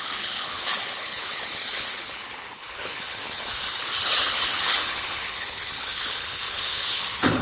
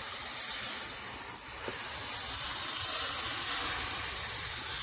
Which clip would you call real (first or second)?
second